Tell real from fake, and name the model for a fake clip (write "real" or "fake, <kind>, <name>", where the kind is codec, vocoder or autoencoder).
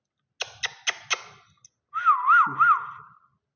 real